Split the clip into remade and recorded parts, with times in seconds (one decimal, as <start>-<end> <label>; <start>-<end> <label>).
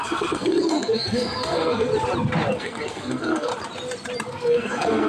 0.0-1.9 remade; 1.9-2.5 recorded; 2.5-3.5 remade; 3.5-4.3 recorded; 4.3-5.1 remade